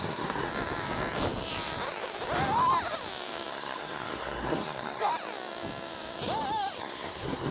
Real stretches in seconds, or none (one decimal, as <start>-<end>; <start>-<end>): 0.5-3.5; 5.1-6.8